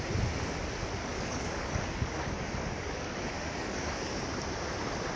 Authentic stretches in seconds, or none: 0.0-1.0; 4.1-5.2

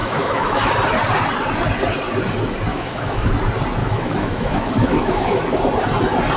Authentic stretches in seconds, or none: 0.7-2.7; 3.3-3.8; 5.4-6.4

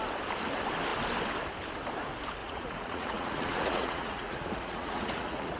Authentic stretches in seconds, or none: 0.0-2.4

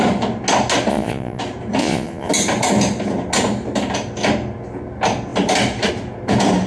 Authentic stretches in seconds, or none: 0.0-0.9; 1.4-1.8; 2.3-6.7

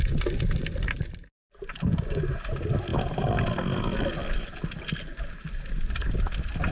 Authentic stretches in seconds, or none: 0.0-1.7; 2.2-6.7

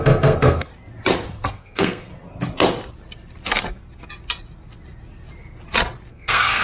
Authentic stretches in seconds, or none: 0.7-1.5; 2.1-6.1